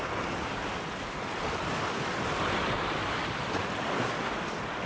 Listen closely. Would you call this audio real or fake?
real